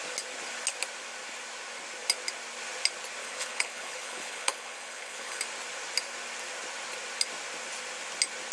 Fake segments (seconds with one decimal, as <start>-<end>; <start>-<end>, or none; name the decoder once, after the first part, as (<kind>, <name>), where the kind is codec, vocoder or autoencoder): 3.2-5.4 (codec, HILCodec)